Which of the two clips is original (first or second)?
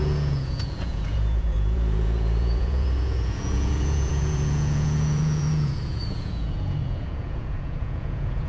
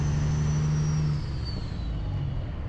second